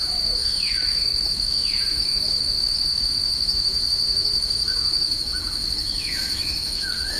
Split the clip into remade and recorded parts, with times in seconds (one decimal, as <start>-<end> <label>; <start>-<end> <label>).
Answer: 0.0-7.2 remade